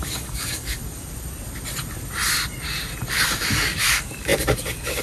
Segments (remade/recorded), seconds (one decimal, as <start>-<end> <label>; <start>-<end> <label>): 0.0-0.8 remade; 0.8-3.4 recorded; 3.4-5.0 remade